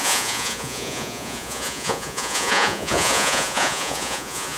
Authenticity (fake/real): fake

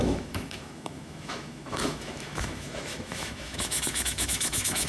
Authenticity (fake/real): fake